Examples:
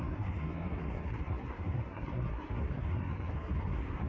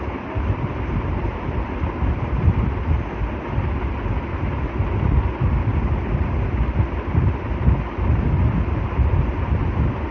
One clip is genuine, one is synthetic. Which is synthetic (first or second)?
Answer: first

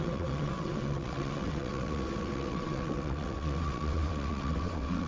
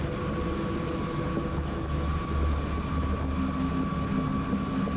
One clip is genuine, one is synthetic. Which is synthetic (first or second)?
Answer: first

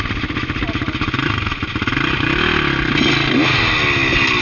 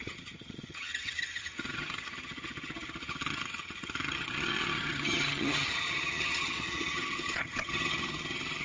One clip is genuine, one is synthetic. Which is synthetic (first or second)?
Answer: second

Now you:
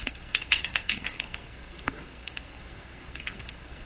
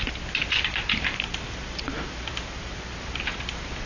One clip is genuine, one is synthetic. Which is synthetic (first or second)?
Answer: first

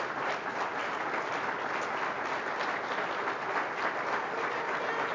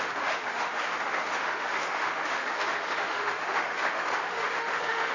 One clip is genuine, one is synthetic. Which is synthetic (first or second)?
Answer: second